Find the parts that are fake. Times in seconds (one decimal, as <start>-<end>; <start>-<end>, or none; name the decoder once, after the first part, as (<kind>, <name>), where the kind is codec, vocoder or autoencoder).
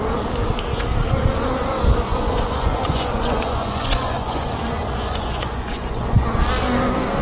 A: 2.1-6.4 (vocoder, Vocos)